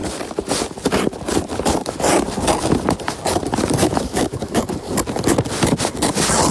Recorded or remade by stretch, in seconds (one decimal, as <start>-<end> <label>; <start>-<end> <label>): 0.0-3.8 recorded; 3.8-4.6 remade; 4.6-6.5 recorded